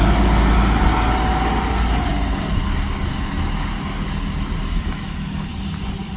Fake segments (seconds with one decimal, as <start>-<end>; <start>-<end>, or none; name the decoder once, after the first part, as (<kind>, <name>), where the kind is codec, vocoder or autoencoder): 4.6-5.4 (autoencoder, DAC-VAE)